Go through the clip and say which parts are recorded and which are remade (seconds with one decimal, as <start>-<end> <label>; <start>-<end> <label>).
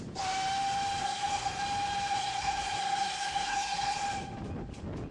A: 0.0-1.0 recorded; 1.0-1.6 remade; 1.6-2.1 recorded; 2.1-4.0 remade; 4.0-5.1 recorded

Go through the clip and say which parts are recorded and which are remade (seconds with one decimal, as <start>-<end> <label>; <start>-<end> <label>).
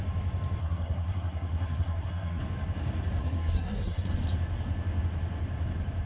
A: 0.0-0.6 recorded; 0.6-2.4 remade; 2.4-3.2 recorded; 3.2-4.1 remade; 4.1-6.1 recorded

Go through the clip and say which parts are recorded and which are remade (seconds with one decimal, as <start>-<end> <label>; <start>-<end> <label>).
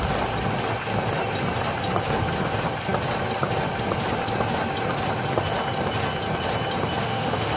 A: 0.0-7.0 recorded; 7.0-7.6 remade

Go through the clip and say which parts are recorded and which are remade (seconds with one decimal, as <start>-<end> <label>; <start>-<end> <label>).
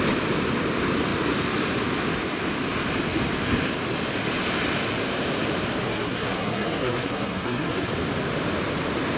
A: 0.0-5.9 recorded; 5.9-7.9 remade; 7.9-9.2 recorded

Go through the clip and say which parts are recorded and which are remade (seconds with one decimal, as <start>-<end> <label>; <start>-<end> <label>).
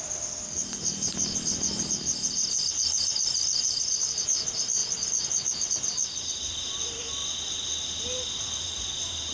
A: 0.0-9.3 recorded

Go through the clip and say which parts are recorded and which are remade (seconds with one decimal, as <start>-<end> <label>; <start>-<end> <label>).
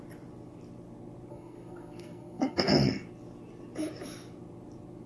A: 0.0-1.3 recorded; 1.3-2.7 remade; 2.7-5.1 recorded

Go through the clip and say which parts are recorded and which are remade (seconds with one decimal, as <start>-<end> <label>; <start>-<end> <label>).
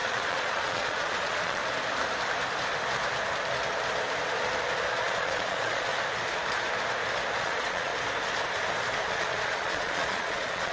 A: 0.0-1.6 remade; 1.6-4.9 recorded; 4.9-5.9 remade; 5.9-7.4 recorded; 7.4-7.9 remade; 7.9-9.1 recorded; 9.1-10.7 remade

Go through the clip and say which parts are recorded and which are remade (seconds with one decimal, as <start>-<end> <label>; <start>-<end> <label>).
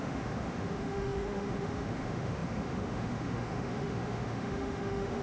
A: 0.0-5.2 remade